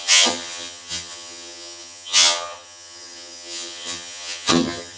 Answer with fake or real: fake